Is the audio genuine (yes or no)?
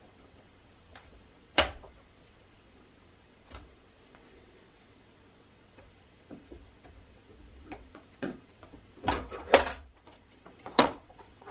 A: no